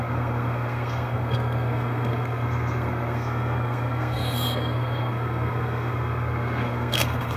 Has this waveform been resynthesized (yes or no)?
yes